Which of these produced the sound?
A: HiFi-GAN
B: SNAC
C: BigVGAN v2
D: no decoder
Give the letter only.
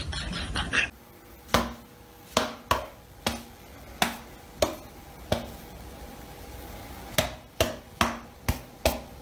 D